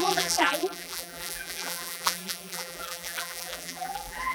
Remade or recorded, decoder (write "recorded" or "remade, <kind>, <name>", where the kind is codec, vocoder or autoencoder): remade, vocoder, BigVGAN v2